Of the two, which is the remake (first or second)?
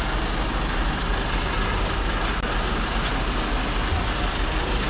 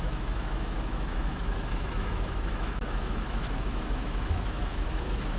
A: second